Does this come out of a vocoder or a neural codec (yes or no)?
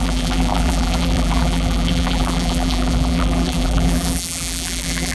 yes